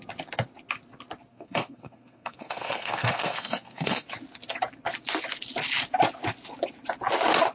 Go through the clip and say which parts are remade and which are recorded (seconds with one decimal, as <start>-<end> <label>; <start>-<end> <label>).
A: 0.0-1.3 recorded; 1.3-4.1 remade; 4.1-7.5 recorded